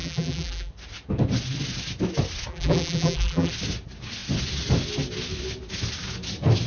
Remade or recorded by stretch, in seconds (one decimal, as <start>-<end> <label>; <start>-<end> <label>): 0.0-0.7 remade; 0.7-2.5 recorded; 2.5-3.5 remade; 3.5-6.7 recorded